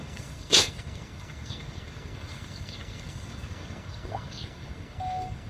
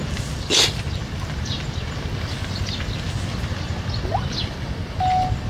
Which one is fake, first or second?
first